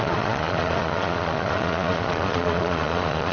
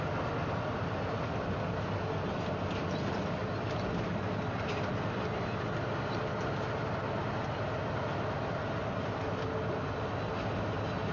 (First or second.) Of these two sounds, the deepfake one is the first